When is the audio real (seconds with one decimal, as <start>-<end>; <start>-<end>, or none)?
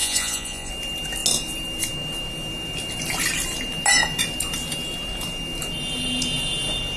0.7-7.0